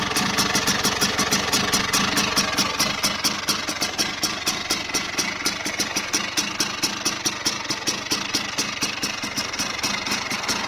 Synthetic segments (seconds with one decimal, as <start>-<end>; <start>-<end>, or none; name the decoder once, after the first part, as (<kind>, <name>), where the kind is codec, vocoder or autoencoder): 9.0-9.8 (vocoder, BigVGAN v2)